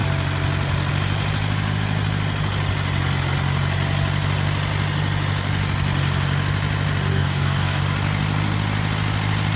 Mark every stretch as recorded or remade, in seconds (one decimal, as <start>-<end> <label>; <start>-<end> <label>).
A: 0.0-7.1 recorded; 7.1-7.8 remade; 7.8-9.6 recorded